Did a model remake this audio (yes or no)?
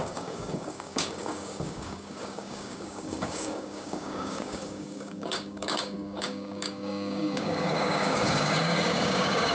yes